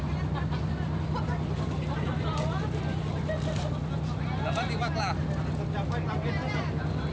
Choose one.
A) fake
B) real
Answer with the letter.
B